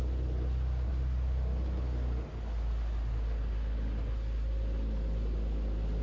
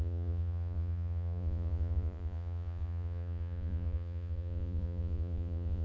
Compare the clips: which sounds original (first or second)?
first